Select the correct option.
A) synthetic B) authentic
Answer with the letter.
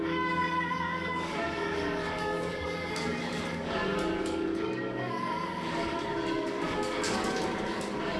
A